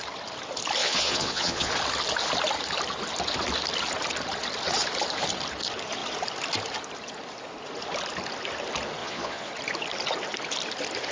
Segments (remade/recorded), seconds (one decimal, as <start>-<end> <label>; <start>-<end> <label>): 0.0-0.8 recorded; 0.8-1.7 remade; 1.7-9.0 recorded; 9.0-9.5 remade; 9.5-11.1 recorded

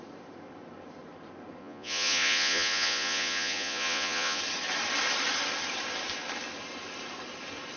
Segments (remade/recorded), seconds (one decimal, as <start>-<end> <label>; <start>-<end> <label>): 0.0-1.6 recorded; 1.6-4.4 remade; 4.4-7.8 recorded

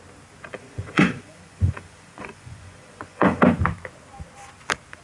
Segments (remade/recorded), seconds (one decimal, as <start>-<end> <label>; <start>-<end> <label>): 0.0-0.5 recorded; 0.5-3.5 remade; 3.5-5.0 recorded

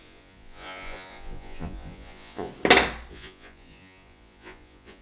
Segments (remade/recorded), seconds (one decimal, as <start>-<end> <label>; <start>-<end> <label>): 0.0-2.5 remade; 2.5-3.1 recorded; 3.1-5.0 remade

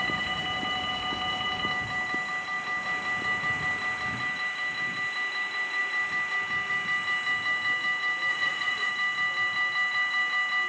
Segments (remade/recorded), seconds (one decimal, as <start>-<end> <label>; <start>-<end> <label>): 0.0-8.3 recorded; 8.3-8.9 remade; 8.9-10.7 recorded

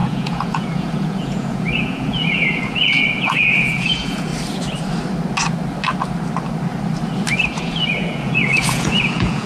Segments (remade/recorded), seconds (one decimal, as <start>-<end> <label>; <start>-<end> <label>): 0.0-4.3 remade; 4.3-7.6 recorded; 7.6-9.5 remade

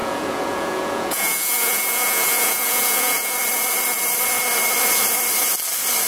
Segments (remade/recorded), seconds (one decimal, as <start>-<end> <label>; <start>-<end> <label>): 0.0-3.3 remade; 3.3-6.1 recorded

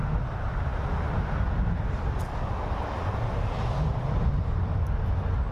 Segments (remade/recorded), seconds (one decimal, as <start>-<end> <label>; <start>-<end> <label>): 0.0-5.5 recorded